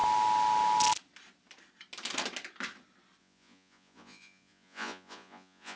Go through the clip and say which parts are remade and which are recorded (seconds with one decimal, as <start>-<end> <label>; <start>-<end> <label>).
0.0-3.2 recorded; 3.2-5.8 remade